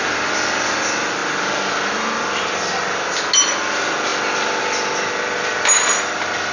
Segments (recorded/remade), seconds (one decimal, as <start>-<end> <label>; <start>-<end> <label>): 0.0-6.5 recorded